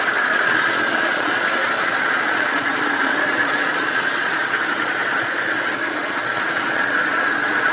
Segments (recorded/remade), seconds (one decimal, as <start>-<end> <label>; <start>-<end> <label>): 0.0-7.7 remade